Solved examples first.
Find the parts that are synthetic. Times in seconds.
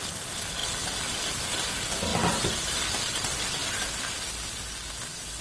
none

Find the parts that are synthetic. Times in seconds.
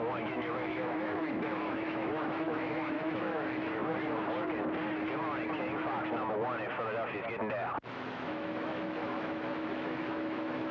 0.0-3.8 (autoencoder, DAC-VAE); 7.9-10.7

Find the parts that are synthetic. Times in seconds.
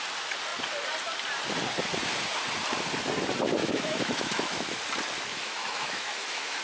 3.6-4.8 (autoencoder, DAC-VAE); 5.3-6.6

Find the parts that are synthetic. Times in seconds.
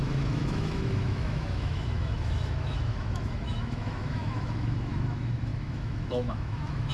0.0-6.9 (autoencoder, DAC-VAE)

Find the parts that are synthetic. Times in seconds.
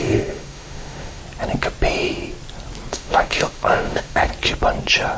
0.0-1.2 (autoencoder, DAC-VAE); 2.9-4.3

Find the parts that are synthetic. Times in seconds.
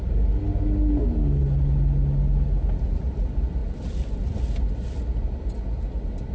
none